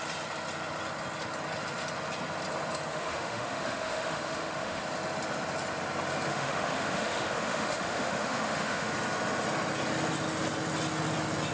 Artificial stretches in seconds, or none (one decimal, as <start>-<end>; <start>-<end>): 2.9-4.8; 6.3-8.9